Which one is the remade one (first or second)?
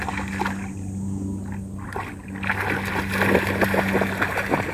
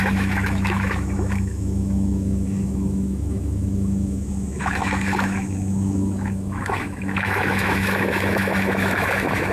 second